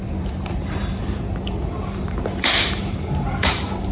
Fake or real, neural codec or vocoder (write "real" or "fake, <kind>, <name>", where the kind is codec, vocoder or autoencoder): fake, vocoder, BigVGAN v2